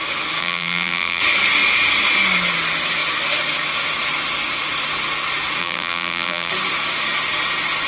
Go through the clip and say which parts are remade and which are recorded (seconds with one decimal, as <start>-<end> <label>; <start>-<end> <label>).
0.0-0.4 recorded; 0.4-1.2 remade; 1.2-5.6 recorded; 5.6-6.5 remade; 6.5-7.9 recorded